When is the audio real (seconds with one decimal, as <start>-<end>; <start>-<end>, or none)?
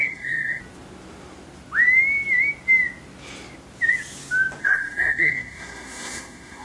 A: 0.6-4.6